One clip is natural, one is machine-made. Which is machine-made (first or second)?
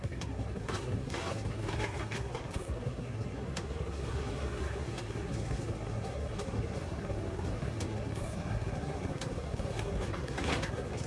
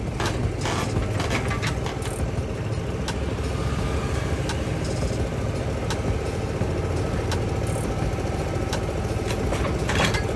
first